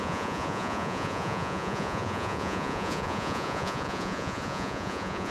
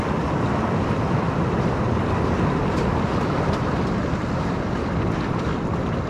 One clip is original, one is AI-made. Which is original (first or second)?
second